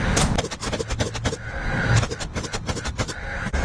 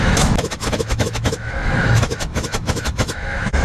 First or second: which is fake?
second